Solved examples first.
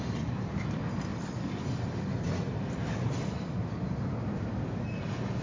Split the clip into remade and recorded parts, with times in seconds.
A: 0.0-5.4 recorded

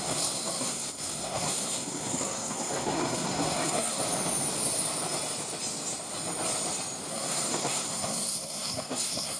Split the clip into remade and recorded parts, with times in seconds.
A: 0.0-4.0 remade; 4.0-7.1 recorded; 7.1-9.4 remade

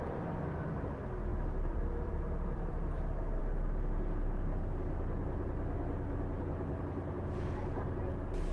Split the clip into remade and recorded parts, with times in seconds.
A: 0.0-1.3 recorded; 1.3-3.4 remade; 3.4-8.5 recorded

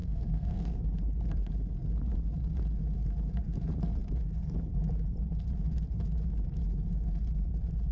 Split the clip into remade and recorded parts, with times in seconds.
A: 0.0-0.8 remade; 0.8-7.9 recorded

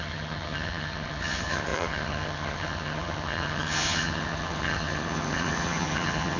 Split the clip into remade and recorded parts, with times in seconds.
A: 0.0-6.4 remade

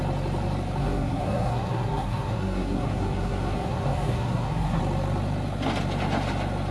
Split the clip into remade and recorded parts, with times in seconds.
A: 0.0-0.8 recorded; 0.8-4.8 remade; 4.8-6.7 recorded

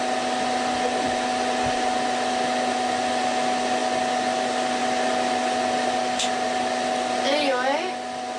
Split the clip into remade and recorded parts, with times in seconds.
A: 0.0-8.4 recorded

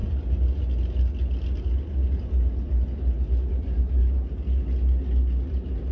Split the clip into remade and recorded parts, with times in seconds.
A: 0.0-5.9 recorded